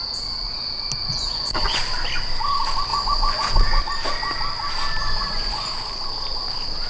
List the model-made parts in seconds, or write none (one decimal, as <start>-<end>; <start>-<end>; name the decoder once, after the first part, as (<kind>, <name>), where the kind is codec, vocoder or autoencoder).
1.1-1.8 (vocoder, Vocos); 2.9-3.8; 5.0-5.7

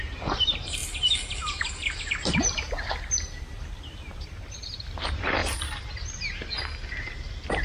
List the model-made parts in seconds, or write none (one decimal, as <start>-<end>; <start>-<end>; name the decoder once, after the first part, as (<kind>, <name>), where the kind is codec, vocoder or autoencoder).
0.0-0.8 (vocoder, BigVGAN v2); 3.9-5.4; 7.0-7.6

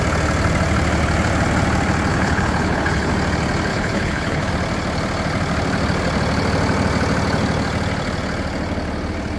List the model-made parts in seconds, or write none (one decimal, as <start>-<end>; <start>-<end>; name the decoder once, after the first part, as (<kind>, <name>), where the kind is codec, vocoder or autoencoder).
2.1-3.1 (codec, HILCodec); 3.7-4.5

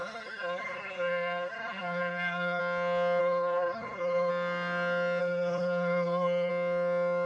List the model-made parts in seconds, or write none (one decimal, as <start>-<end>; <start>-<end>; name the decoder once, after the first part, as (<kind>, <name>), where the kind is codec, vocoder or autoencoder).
0.0-2.6 (codec, SNAC); 3.2-4.3; 5.2-6.5

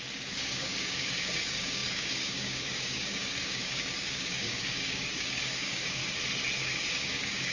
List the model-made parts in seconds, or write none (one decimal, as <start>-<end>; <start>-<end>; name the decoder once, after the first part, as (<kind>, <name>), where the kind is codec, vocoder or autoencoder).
0.0-6.0 (codec, DAC); 6.6-7.5

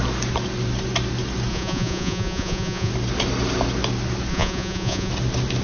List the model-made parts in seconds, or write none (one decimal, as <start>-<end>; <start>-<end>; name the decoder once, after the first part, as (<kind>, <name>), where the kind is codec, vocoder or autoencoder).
1.5-2.9 (vocoder, Vocos); 4.3-5.1

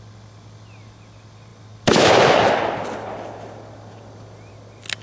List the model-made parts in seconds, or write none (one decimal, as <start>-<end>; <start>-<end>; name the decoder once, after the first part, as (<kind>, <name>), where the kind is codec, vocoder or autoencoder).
none

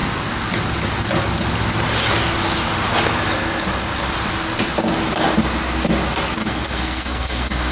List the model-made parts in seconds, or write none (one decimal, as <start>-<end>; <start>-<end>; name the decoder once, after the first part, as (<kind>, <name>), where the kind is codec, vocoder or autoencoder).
6.4-7.7 (codec, SNAC)